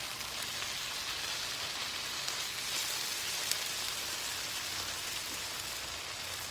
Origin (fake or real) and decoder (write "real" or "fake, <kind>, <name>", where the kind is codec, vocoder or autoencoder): real